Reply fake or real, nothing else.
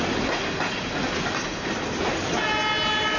real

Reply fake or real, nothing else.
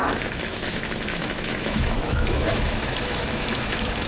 fake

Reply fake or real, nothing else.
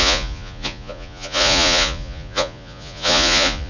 fake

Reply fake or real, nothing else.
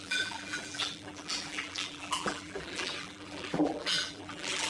fake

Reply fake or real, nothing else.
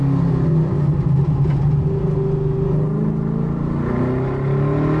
real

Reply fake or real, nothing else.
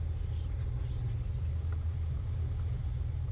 real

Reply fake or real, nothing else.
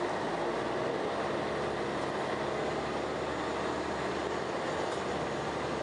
real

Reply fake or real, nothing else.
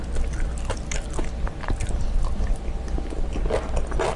real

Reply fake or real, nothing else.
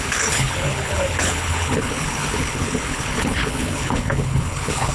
fake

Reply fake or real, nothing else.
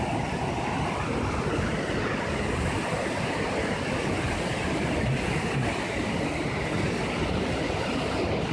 real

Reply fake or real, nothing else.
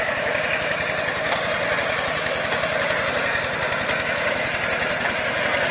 real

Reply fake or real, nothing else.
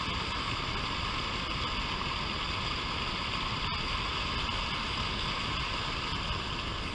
real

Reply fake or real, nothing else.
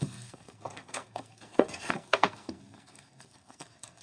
fake